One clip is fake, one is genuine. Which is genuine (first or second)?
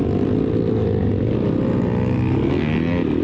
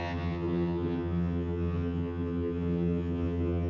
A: first